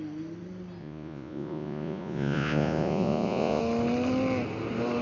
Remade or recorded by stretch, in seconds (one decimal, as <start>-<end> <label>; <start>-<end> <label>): 0.0-0.8 recorded; 0.8-3.6 remade; 3.6-5.0 recorded